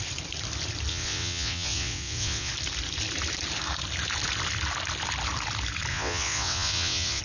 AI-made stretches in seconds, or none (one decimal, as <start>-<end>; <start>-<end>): 0.9-2.5; 5.9-7.2